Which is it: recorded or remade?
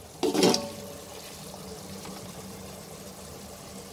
recorded